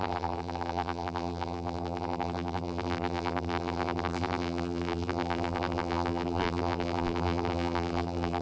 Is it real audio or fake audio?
fake